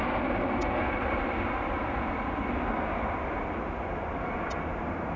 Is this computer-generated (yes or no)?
no